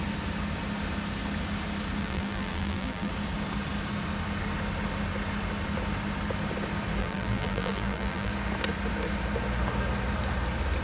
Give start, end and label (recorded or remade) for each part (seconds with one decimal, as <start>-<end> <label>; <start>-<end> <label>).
0.0-2.0 recorded; 2.0-3.1 remade; 3.1-7.0 recorded; 7.0-8.3 remade; 8.3-10.8 recorded